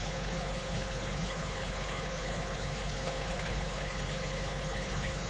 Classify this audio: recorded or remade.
remade